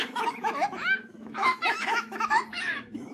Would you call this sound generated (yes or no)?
yes